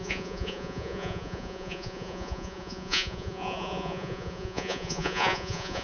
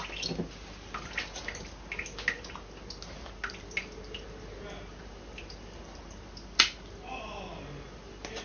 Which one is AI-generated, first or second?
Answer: first